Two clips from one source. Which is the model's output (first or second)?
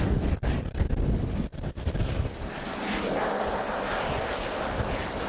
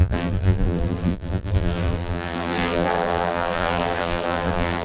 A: second